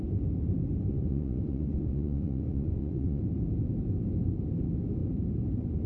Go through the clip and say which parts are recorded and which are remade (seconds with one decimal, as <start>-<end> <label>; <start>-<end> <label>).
0.0-0.9 recorded; 0.9-3.2 remade; 3.2-5.9 recorded